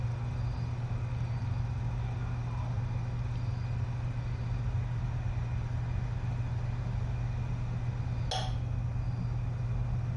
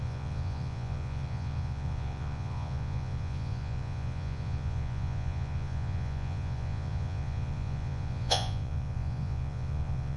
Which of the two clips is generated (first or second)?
second